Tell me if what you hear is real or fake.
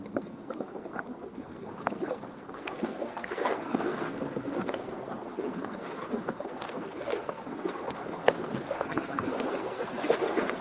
fake